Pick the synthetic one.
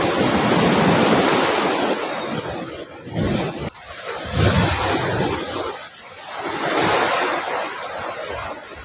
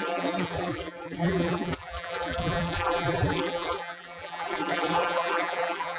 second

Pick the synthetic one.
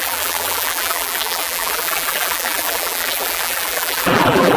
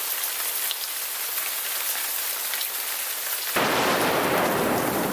first